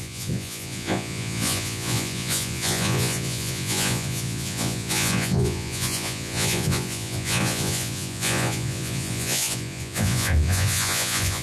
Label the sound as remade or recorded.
remade